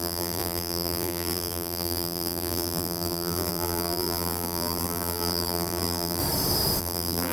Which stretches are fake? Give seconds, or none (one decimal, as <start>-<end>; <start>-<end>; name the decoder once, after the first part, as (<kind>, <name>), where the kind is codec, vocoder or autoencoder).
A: 0.0-6.2 (vocoder, BigVGAN v2); 6.8-7.3